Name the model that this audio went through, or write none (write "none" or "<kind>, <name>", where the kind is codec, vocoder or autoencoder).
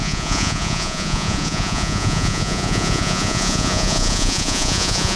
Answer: vocoder, Vocos